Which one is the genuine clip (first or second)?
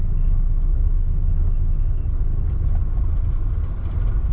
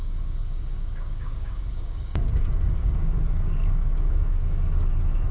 first